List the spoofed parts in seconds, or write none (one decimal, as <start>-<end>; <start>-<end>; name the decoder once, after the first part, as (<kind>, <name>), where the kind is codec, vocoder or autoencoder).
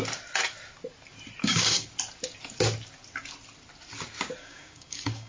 1.4-1.9 (codec, DAC); 4.4-5.3